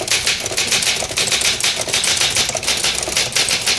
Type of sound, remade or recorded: recorded